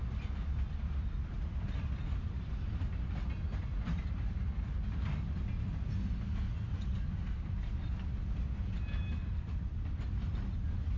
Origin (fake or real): real